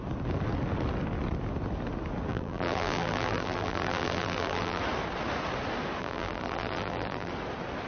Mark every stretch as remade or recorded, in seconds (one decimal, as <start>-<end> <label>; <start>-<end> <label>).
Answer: 0.0-2.3 recorded; 2.3-4.8 remade; 4.8-6.0 recorded; 6.0-7.3 remade; 7.3-7.9 recorded